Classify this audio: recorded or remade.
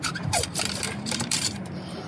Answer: remade